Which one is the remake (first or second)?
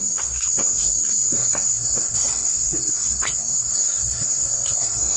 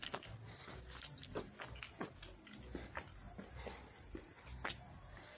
first